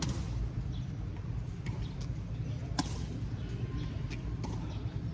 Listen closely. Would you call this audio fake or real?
real